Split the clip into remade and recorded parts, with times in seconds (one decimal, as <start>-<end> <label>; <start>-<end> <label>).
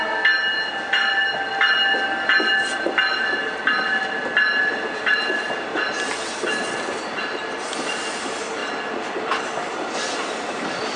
0.0-11.0 recorded